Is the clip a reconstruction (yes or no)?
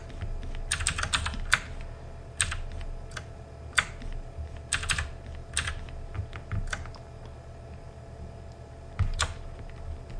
no